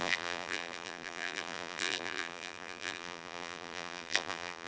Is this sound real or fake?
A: fake